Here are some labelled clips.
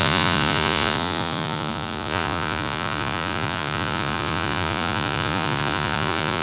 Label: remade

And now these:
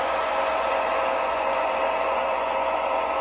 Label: remade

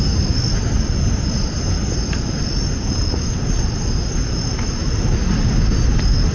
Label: recorded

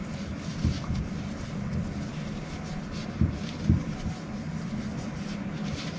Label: recorded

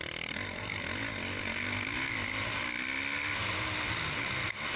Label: recorded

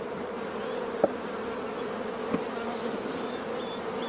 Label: recorded